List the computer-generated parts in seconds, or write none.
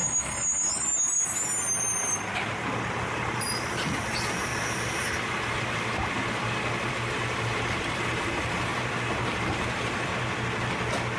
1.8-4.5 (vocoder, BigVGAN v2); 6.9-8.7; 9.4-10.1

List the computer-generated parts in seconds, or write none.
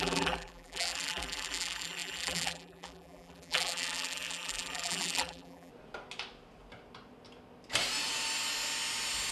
0.0-5.7 (vocoder, BigVGAN v2)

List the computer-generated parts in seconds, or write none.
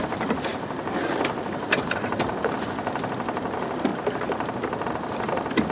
0.5-2.3 (vocoder, BigVGAN v2); 3.9-4.8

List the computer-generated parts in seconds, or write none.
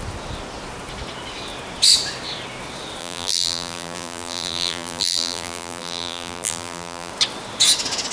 3.0-7.1 (vocoder, BigVGAN v2)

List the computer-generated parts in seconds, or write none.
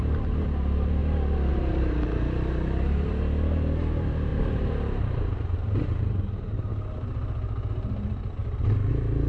0.0-1.0 (vocoder, BigVGAN v2); 1.5-6.7; 7.7-8.4; 8.9-9.3